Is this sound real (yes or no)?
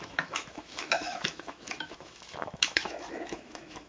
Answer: no